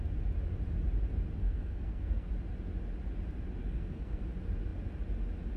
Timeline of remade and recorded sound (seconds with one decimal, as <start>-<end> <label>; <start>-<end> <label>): 0.0-1.4 recorded; 1.4-2.3 remade; 2.3-3.6 recorded; 3.6-4.2 remade; 4.2-5.6 recorded